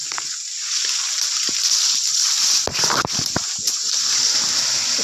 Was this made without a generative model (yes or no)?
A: yes